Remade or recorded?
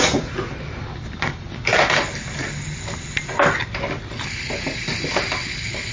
recorded